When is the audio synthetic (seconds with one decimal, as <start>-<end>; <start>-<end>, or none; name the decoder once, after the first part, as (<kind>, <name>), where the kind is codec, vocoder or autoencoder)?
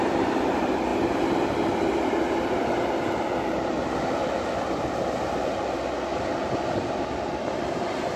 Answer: none